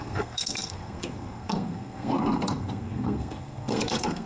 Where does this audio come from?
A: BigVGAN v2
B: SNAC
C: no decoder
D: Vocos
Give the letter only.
B